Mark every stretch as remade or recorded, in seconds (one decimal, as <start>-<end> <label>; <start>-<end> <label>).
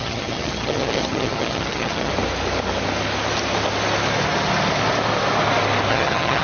0.0-2.1 remade; 2.1-5.9 recorded; 5.9-6.4 remade